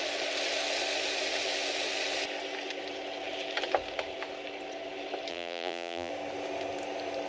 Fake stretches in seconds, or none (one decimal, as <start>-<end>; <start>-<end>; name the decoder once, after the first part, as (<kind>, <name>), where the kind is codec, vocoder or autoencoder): 5.3-6.1 (vocoder, BigVGAN v2)